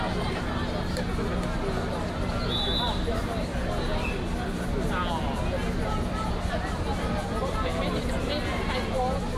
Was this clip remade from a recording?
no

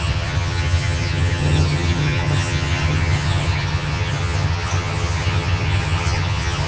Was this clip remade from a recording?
yes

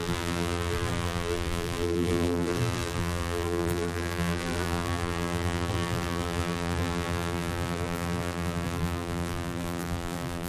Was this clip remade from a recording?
yes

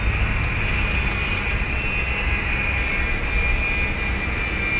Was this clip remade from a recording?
no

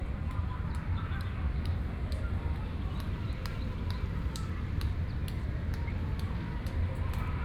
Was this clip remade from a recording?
no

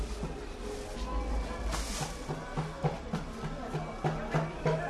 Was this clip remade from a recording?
no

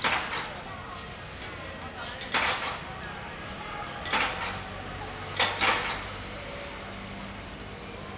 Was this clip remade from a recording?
no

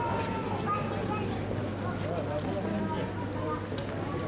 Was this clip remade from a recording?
no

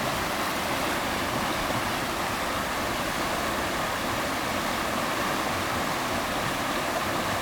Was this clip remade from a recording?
no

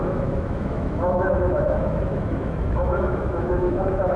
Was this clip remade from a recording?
yes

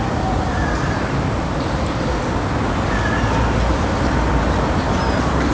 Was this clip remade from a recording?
no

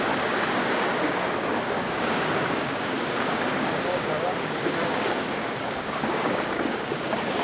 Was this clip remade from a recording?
yes